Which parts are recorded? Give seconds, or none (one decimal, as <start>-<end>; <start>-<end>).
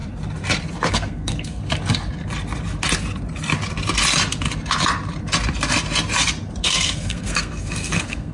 0.0-0.9; 1.6-6.6